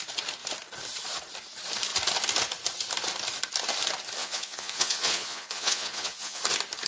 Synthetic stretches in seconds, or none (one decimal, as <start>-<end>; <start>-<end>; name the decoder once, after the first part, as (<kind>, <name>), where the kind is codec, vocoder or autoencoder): 4.2-6.4 (vocoder, Vocos)